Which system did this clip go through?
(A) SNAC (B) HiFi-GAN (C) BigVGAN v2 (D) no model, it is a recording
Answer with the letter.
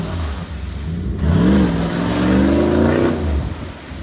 D